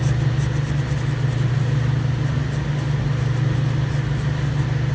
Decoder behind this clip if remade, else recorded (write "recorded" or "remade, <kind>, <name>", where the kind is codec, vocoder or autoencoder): recorded